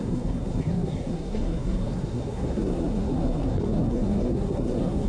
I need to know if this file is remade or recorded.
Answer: remade